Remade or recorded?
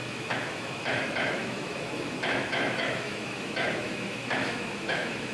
remade